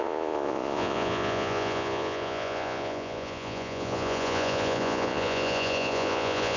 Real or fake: fake